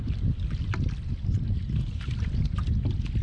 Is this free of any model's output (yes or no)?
yes